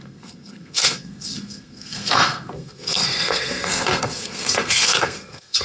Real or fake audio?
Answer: fake